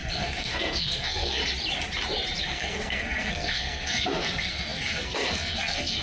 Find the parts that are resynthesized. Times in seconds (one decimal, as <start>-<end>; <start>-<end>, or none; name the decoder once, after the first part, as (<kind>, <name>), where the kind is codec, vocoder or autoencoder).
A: 0.0-1.4 (codec, SNAC); 2.4-6.0